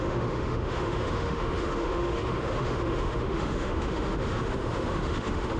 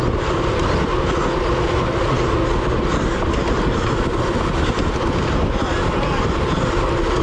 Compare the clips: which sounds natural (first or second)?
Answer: second